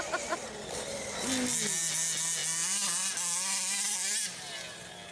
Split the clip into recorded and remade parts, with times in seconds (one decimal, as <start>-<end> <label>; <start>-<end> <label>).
0.0-5.1 recorded